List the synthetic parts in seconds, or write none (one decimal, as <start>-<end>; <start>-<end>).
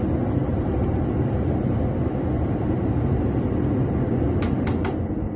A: none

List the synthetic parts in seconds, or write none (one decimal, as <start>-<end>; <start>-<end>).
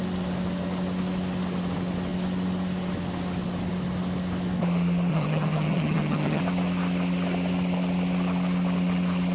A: 5.1-6.4